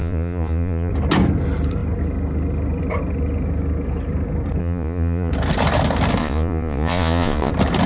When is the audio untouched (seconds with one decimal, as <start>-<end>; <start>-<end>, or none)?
0.9-4.6; 5.3-6.2; 7.5-7.9